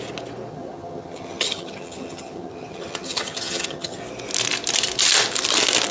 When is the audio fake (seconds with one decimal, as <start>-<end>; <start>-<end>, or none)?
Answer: 0.5-4.0